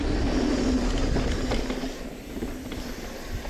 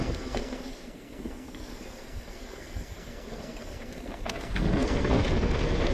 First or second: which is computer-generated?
second